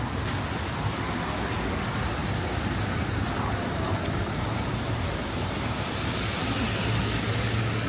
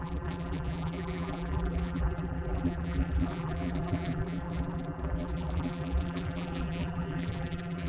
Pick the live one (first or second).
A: first